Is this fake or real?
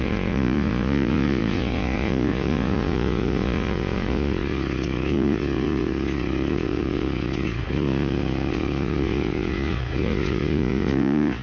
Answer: fake